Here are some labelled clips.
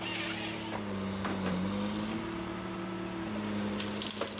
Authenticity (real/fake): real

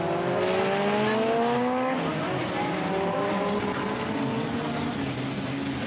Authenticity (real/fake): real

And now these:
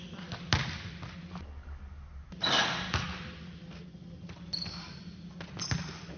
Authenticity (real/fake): real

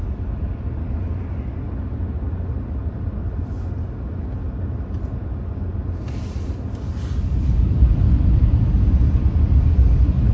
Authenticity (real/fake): real